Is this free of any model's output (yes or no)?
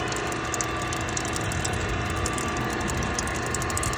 yes